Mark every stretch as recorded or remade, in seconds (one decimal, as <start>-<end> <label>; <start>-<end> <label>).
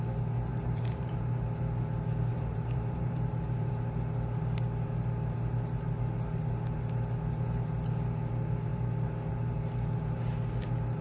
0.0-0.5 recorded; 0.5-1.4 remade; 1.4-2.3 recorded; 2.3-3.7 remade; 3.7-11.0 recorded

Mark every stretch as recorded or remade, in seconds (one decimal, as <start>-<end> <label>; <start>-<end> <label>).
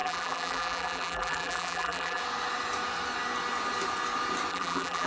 0.0-2.2 remade; 2.2-4.5 recorded; 4.5-5.1 remade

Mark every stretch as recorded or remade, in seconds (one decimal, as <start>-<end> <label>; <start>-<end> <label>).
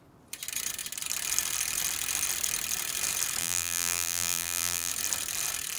0.0-3.4 recorded; 3.4-4.9 remade; 4.9-5.8 recorded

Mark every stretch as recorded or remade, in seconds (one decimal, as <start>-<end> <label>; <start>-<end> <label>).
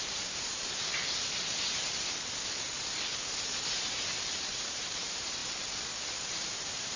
0.0-0.9 remade; 0.9-3.8 recorded; 3.8-5.4 remade; 5.4-6.2 recorded; 6.2-7.0 remade